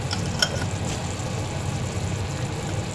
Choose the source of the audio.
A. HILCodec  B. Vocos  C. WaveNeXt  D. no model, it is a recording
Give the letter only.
D